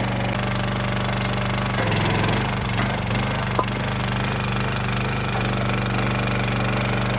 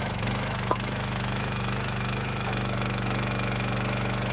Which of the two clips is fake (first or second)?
second